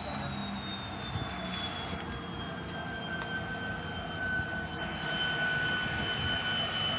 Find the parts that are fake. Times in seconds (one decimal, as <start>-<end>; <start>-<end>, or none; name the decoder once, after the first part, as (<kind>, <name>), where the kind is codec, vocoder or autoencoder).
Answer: none